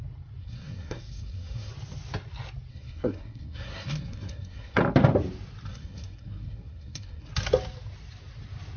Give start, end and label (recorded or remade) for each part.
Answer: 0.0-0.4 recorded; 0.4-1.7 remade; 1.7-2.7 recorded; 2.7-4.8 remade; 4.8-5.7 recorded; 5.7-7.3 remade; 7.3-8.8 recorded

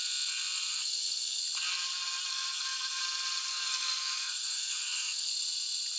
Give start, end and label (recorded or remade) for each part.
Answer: 0.0-0.7 recorded; 0.7-1.4 remade; 1.4-2.3 recorded; 2.3-3.0 remade; 3.0-3.5 recorded; 3.5-5.3 remade; 5.3-6.0 recorded

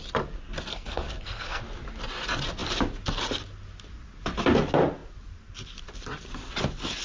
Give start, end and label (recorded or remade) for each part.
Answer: 0.0-0.7 recorded; 0.7-1.6 remade; 1.6-7.0 recorded